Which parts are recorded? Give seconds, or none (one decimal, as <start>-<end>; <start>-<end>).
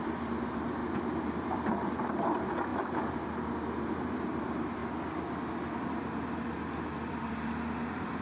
0.8-1.4; 4.8-5.8